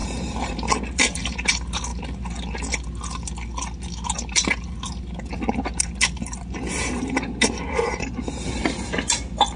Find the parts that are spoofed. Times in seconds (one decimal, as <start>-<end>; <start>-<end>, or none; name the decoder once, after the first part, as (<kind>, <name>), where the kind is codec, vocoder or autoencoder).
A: 0.0-1.5 (vocoder, BigVGAN v2)